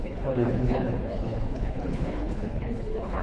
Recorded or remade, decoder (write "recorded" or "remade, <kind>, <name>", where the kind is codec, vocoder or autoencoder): remade, codec, HILCodec